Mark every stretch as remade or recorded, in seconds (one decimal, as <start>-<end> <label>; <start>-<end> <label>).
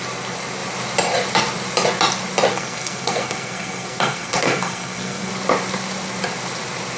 0.0-2.5 recorded; 2.5-5.3 remade; 5.3-7.0 recorded